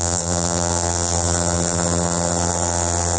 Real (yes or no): no